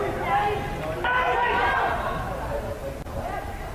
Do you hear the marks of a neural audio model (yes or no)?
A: no